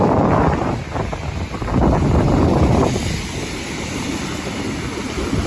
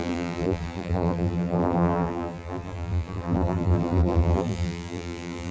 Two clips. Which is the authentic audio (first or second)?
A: first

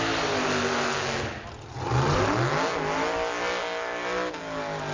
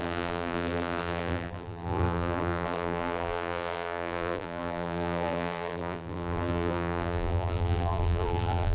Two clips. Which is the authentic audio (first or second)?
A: first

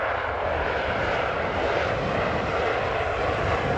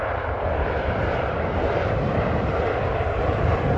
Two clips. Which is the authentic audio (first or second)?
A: first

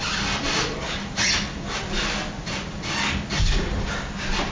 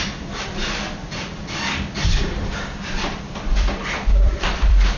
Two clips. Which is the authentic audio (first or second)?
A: first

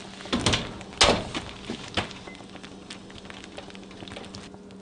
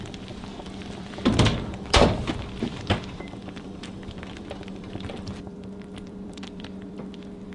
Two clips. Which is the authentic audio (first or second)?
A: first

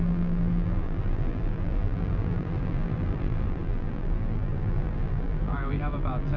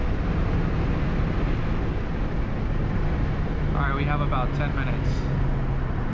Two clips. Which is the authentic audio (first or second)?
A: second